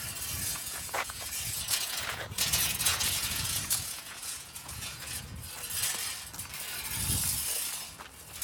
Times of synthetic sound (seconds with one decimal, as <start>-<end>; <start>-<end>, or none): 0.5-5.2